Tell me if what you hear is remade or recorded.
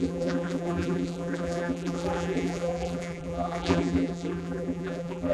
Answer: remade